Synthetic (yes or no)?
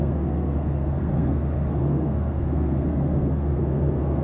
yes